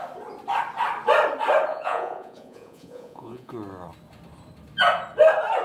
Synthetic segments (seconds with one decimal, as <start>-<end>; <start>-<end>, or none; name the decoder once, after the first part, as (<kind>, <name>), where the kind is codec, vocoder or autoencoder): 1.7-3.5 (vocoder, Vocos)